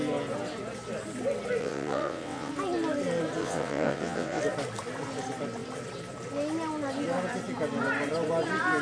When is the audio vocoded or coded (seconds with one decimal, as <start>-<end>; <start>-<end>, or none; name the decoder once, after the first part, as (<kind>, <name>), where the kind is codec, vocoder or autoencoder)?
1.6-2.5 (vocoder, WaveNeXt); 3.4-4.4